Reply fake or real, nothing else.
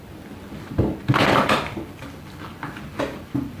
fake